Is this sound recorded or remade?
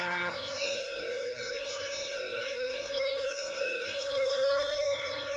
remade